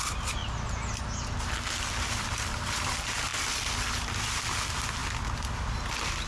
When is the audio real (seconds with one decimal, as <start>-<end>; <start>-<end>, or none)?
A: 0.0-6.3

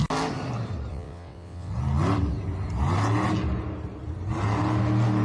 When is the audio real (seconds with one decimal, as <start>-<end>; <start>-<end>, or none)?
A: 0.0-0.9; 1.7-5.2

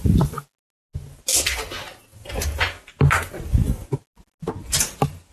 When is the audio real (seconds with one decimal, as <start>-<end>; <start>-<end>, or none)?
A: 0.0-5.3

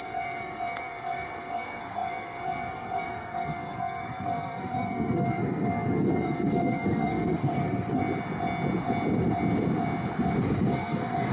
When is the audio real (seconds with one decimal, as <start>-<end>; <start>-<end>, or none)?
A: 8.0-10.4